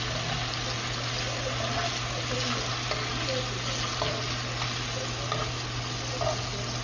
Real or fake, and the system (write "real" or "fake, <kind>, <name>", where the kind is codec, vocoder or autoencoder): real